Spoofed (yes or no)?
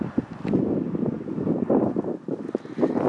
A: no